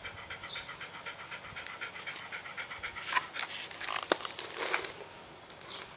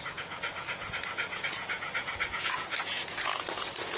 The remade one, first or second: second